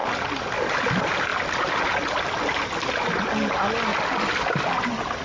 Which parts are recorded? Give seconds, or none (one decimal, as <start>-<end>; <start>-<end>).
0.0-1.3; 1.8-3.9; 4.6-5.2